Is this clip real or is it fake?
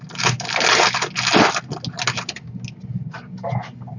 real